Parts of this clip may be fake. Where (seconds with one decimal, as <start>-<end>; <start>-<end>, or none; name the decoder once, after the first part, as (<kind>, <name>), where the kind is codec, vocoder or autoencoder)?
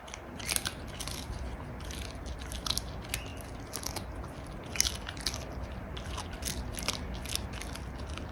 none